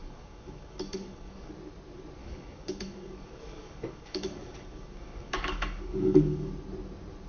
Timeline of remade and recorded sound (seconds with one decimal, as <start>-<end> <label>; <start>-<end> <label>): 0.0-1.5 remade; 1.5-2.2 recorded; 2.2-6.5 remade; 6.5-7.3 recorded